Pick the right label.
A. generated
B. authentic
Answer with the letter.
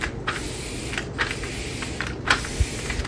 B